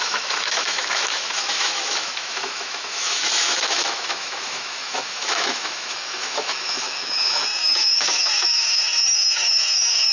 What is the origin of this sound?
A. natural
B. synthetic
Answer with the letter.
B